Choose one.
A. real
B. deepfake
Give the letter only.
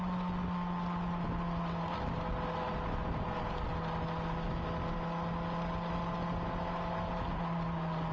A